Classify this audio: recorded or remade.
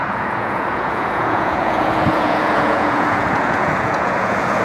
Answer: remade